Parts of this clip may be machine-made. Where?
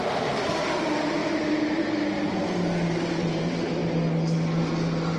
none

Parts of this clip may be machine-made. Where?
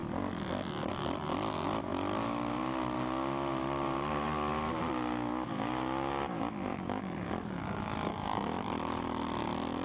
6.7-8.1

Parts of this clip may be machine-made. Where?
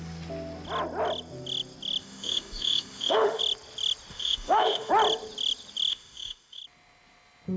2.0-3.4; 4.1-4.9; 5.9-6.6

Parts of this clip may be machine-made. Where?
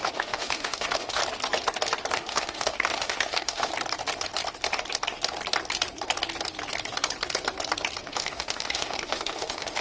0.0-1.2; 2.1-3.7; 8.0-9.8